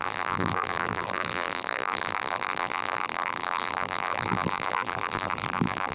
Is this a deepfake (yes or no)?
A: yes